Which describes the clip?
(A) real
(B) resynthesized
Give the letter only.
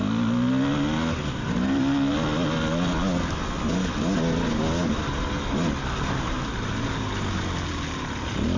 A